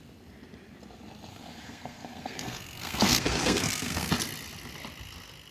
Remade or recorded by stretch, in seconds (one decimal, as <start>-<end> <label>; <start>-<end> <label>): 0.0-1.3 recorded; 1.3-4.1 remade; 4.1-5.5 recorded